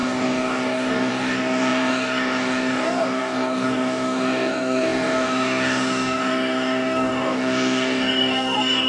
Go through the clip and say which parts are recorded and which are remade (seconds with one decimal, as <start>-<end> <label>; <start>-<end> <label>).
0.0-8.9 remade